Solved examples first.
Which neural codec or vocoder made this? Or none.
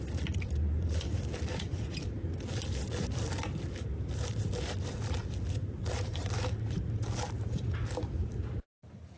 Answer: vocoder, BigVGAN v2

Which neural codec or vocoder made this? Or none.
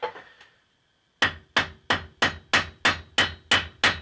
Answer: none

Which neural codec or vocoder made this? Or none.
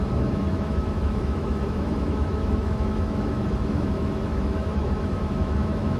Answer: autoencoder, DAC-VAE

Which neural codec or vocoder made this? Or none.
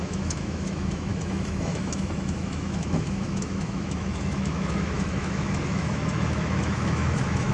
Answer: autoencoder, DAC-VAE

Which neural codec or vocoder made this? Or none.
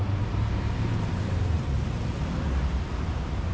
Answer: vocoder, BigVGAN v2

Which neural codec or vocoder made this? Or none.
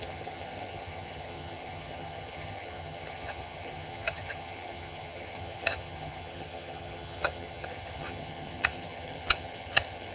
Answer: vocoder, HiFi-GAN